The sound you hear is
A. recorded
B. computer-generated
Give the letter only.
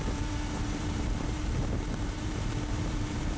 B